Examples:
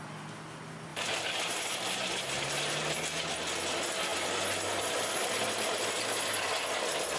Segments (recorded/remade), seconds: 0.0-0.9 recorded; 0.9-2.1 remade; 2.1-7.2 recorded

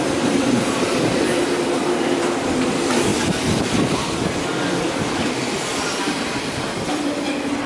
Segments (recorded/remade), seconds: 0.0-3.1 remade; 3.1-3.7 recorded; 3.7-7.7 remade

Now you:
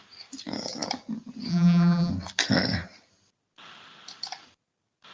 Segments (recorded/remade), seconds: 0.0-1.5 recorded; 1.5-2.1 remade; 2.1-5.1 recorded

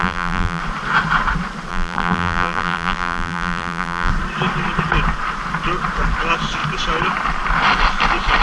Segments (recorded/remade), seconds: 0.0-0.6 remade; 0.6-1.7 recorded; 1.7-4.1 remade; 4.1-8.4 recorded

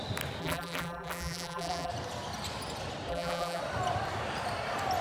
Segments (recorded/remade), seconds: 0.0-0.4 recorded; 0.4-1.9 remade; 1.9-3.1 recorded; 3.1-3.6 remade; 3.6-5.0 recorded